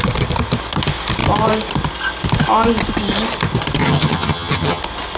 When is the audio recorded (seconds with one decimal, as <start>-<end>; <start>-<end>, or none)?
0.0-3.8; 4.8-5.2